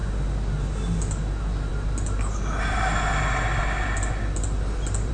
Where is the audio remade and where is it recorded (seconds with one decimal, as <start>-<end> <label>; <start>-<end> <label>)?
0.0-5.1 recorded